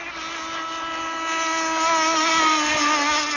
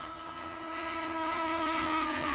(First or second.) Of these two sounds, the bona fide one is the first